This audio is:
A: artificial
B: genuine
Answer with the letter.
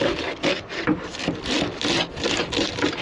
B